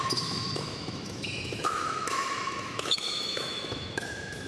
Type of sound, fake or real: fake